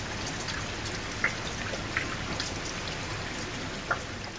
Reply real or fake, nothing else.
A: real